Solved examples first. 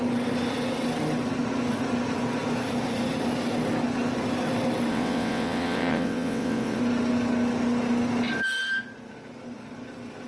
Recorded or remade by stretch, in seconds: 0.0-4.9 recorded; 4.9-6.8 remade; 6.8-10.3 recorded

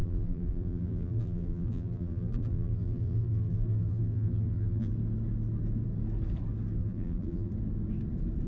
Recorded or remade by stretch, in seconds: 0.0-4.9 remade; 4.9-6.8 recorded; 6.8-7.5 remade; 7.5-8.5 recorded

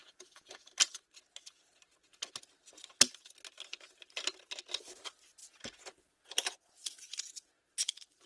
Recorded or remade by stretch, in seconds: 0.0-0.7 remade; 0.7-5.4 recorded; 5.4-6.2 remade; 6.2-6.8 recorded; 6.8-7.5 remade; 7.5-8.3 recorded